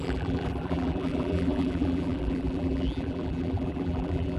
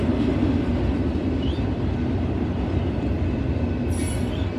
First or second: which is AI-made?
first